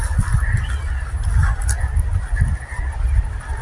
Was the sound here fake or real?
real